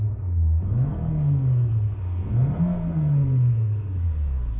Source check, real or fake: fake